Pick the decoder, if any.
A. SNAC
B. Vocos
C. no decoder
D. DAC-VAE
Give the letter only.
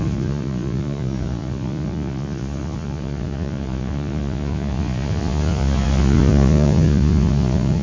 B